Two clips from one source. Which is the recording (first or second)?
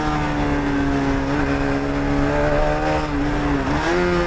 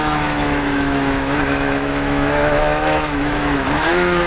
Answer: first